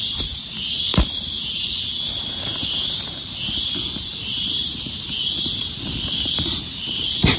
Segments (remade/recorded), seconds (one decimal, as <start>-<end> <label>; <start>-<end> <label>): 0.0-7.4 remade